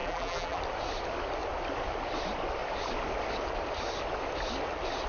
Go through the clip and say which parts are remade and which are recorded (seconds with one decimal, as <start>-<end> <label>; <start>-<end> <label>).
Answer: 0.0-0.6 remade; 0.6-5.1 recorded